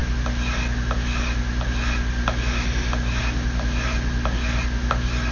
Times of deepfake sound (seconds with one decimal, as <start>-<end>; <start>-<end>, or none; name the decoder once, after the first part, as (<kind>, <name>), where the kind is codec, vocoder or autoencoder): none

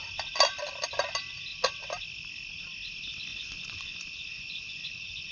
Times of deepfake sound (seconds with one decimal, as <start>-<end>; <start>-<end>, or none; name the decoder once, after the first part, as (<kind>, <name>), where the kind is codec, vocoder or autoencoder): 3.3-5.3 (vocoder, Vocos)

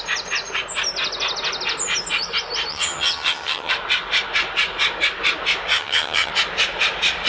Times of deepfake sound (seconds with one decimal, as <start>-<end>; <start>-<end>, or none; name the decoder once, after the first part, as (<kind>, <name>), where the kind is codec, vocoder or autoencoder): 2.7-3.7 (vocoder, HiFi-GAN); 5.7-6.3

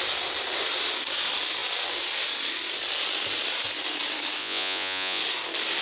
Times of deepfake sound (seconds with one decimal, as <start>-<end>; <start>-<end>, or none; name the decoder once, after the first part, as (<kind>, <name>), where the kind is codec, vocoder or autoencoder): 4.4-5.2 (vocoder, Vocos)

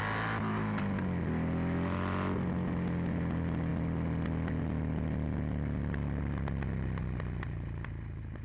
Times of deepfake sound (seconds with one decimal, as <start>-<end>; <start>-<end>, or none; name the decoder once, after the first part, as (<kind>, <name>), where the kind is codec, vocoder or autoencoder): none

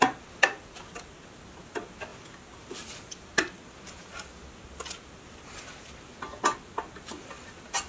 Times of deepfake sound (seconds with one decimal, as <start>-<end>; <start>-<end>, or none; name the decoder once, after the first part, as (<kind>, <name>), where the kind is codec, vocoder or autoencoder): 2.1-2.8 (vocoder, BigVGAN v2); 3.6-4.3